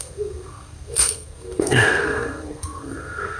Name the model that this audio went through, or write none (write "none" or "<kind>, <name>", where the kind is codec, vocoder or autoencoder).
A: codec, SNAC